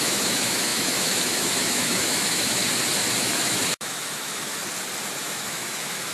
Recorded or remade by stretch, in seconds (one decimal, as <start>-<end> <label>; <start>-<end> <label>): 0.0-2.6 remade; 2.6-3.2 recorded; 3.2-4.6 remade; 4.6-5.2 recorded; 5.2-6.1 remade